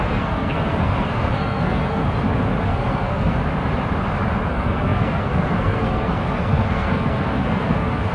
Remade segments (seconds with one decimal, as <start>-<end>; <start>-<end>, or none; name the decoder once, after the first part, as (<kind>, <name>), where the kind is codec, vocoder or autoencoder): 0.0-2.0 (codec, SNAC); 2.6-3.4; 4.5-8.1